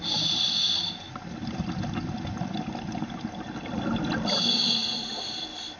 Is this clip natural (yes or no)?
yes